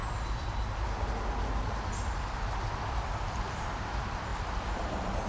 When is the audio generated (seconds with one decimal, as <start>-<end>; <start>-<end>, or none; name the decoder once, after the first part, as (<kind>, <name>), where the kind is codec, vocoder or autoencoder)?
3.2-4.3 (vocoder, BigVGAN v2); 4.8-5.3